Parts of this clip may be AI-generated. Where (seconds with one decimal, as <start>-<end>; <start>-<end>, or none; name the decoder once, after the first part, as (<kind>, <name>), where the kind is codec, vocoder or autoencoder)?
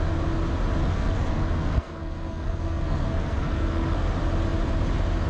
0.8-4.0 (codec, SNAC)